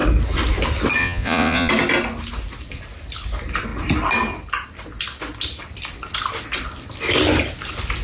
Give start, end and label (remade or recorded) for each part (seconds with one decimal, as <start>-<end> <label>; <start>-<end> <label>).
0.0-1.0 recorded; 1.0-1.7 remade; 1.7-8.0 recorded